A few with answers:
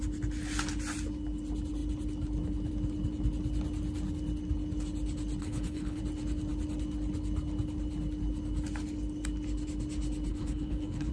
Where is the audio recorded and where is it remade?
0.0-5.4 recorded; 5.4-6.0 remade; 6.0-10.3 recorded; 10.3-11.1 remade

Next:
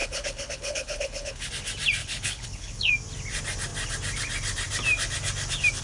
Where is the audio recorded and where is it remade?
0.0-1.5 remade; 1.5-2.0 recorded; 2.0-2.9 remade; 2.9-5.8 recorded